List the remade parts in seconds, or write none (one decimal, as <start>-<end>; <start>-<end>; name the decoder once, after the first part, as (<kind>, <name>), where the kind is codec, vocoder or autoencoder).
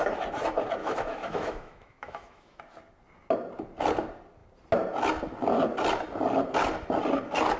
0.8-2.6 (autoencoder, DAC-VAE)